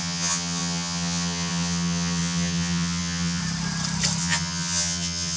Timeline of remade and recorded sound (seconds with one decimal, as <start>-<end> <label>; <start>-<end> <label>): 0.0-3.4 remade; 3.4-4.2 recorded; 4.2-5.4 remade